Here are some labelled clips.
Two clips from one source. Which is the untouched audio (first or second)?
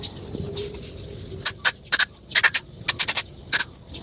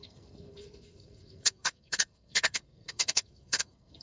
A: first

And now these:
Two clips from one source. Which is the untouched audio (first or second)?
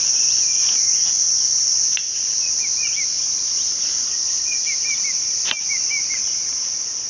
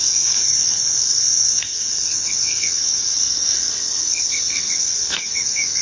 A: first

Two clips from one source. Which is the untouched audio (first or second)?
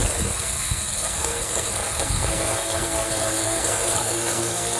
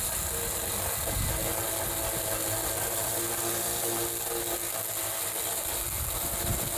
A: second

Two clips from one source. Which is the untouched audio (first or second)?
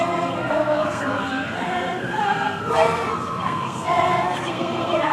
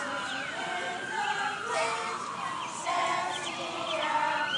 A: second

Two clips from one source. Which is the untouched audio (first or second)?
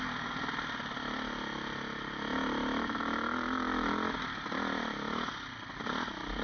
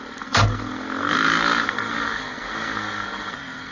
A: first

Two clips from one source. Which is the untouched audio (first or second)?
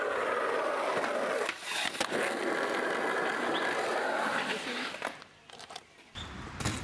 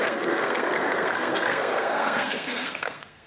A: first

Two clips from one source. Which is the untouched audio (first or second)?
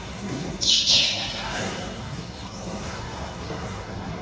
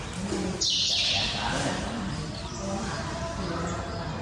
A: second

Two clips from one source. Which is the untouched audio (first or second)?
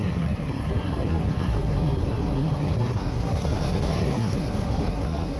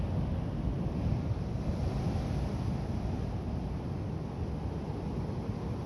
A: second